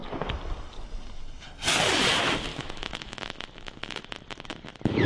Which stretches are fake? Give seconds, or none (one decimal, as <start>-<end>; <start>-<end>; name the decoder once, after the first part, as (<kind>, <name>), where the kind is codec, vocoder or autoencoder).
2.5-4.1 (autoencoder, DAC-VAE)